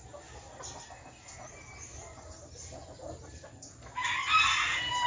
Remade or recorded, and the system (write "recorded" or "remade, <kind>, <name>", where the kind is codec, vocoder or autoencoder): recorded